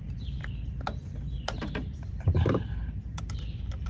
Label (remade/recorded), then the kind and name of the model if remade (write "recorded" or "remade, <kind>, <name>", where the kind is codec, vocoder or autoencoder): remade, vocoder, BigVGAN v2